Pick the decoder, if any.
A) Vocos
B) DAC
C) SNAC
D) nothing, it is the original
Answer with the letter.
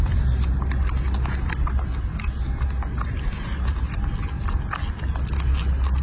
D